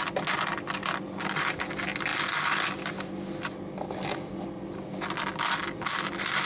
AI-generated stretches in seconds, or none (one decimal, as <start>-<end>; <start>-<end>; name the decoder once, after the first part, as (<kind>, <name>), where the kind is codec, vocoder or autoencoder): none